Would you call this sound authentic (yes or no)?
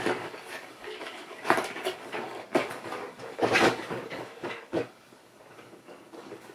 no